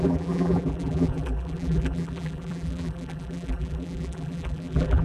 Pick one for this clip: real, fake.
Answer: fake